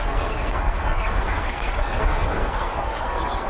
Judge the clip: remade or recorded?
remade